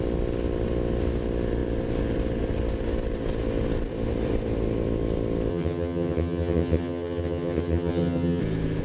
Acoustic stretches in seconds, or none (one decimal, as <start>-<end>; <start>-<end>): 0.0-5.5; 8.4-8.8